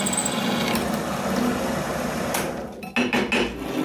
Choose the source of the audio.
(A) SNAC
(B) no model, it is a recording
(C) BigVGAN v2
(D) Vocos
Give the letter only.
B